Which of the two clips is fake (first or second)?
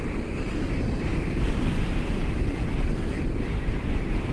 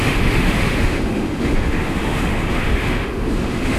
second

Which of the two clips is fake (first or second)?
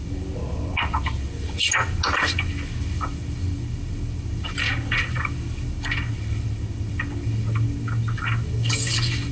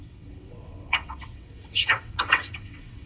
second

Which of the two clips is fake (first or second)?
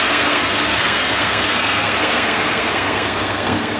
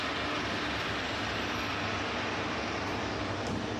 first